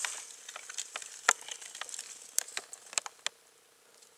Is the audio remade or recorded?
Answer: recorded